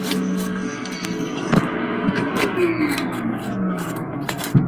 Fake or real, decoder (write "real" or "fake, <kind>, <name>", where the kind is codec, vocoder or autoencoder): fake, codec, SNAC